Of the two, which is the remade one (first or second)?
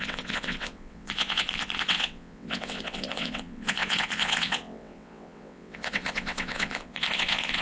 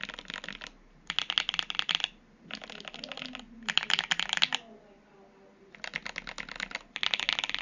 first